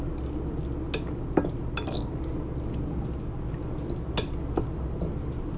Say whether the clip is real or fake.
real